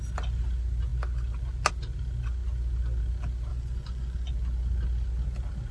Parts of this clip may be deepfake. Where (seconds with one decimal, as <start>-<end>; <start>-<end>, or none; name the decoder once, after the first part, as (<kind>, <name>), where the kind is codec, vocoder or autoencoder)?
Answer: 3.5-4.3 (vocoder, Vocos)

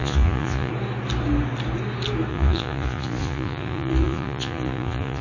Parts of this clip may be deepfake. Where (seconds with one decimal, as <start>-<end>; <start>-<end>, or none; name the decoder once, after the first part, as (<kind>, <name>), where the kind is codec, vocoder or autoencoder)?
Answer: 0.0-0.7 (vocoder, Vocos); 2.3-5.2

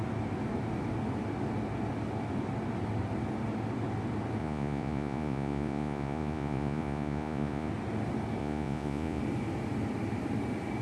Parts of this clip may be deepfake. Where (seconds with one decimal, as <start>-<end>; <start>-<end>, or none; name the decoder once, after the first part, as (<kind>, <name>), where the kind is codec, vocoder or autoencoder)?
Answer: 4.4-7.7 (vocoder, Vocos); 8.4-9.2

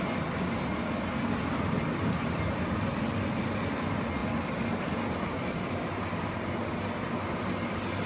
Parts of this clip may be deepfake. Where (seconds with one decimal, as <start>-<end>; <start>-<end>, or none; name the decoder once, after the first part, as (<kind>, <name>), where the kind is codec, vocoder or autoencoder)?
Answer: none

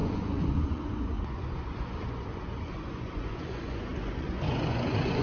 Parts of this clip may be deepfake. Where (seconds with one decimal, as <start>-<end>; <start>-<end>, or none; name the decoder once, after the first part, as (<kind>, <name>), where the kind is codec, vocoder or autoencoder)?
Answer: 0.0-5.2 (vocoder, Vocos)

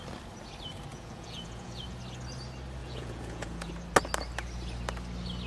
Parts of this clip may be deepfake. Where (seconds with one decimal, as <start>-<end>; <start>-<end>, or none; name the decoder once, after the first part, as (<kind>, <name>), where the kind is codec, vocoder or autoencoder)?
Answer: 0.9-1.8 (vocoder, Vocos); 2.8-3.7